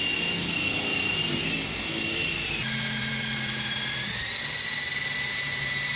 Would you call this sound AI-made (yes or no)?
no